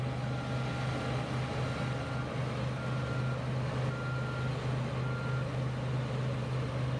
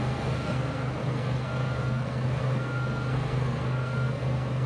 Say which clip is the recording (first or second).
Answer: first